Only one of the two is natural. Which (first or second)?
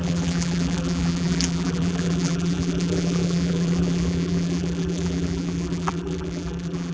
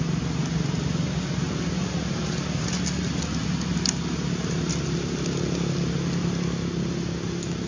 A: second